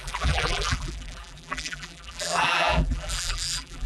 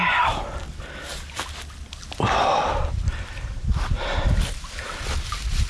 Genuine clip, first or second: second